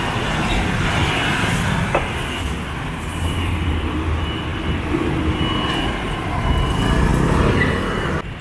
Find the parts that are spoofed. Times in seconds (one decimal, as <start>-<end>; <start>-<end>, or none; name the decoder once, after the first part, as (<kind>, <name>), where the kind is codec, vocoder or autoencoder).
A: none